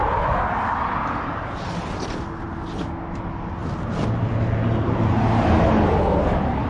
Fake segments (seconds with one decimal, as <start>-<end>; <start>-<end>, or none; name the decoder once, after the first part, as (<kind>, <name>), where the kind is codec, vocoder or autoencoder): none